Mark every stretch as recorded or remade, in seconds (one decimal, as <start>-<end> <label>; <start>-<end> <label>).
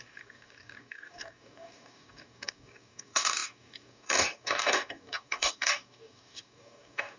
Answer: 0.0-7.2 remade